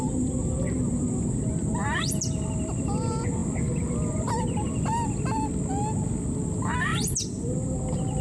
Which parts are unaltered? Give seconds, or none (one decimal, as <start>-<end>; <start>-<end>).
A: 0.0-8.2